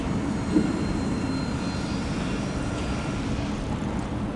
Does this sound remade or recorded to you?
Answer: recorded